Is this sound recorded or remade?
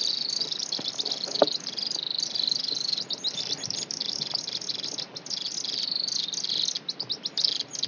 recorded